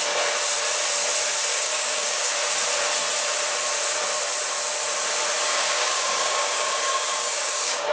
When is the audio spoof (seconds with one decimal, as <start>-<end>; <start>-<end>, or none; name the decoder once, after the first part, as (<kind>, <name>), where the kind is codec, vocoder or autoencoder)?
1.5-2.3 (codec, DAC); 5.5-7.9